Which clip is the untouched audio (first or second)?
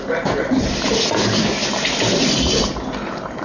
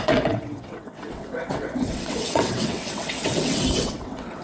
first